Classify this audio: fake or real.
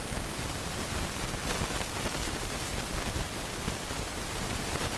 fake